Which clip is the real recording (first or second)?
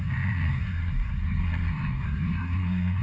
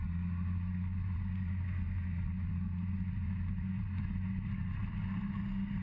second